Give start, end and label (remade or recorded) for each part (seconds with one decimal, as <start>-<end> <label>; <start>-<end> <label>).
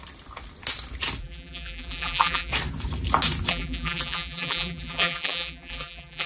0.0-1.2 recorded; 1.2-2.5 remade; 2.5-3.5 recorded; 3.5-6.3 remade